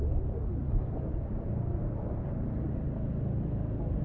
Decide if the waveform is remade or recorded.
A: recorded